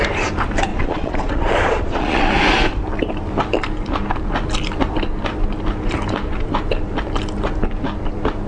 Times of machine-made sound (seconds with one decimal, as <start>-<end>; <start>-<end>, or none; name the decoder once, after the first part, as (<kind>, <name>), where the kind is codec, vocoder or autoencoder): 0.7-2.3 (vocoder, Vocos)